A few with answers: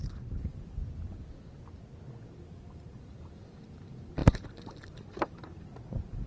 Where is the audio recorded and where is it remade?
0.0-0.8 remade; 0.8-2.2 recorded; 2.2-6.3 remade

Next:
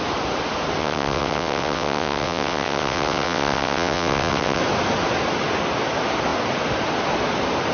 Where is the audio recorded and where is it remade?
0.0-0.8 recorded; 0.8-4.6 remade; 4.6-7.7 recorded

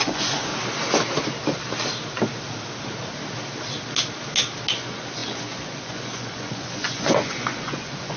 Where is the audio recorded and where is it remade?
0.0-0.5 remade; 0.5-4.7 recorded; 4.7-8.2 remade

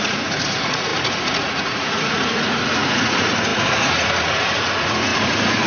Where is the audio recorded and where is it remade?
0.0-5.7 remade